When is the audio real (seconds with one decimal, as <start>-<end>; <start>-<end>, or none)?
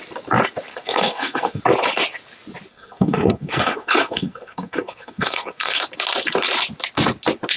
0.0-0.7; 1.6-2.7; 5.8-7.6